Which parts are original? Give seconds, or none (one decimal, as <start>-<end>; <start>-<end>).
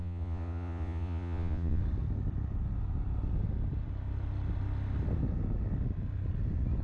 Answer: 1.8-6.8